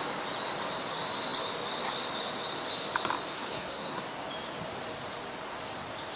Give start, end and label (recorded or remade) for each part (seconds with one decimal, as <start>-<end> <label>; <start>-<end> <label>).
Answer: 0.0-3.3 recorded; 3.3-4.0 remade; 4.0-6.2 recorded